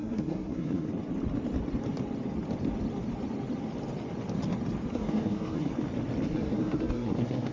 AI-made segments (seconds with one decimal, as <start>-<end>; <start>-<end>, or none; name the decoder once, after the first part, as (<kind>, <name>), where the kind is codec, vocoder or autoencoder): 0.0-0.9 (codec, SNAC); 4.9-5.7; 6.3-7.5